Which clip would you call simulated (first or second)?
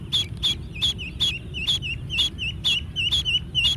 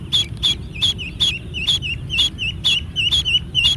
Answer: second